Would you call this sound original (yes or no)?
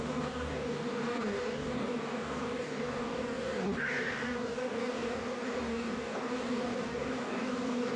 no